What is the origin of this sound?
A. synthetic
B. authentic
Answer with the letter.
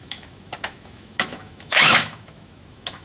A